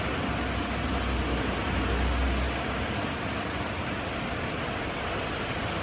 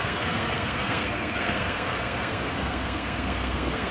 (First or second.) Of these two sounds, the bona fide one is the first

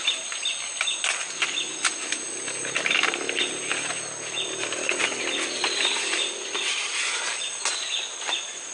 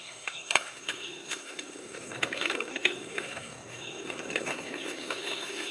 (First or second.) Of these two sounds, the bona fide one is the first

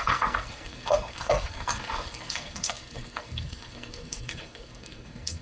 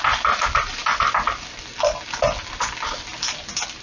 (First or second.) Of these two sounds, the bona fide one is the second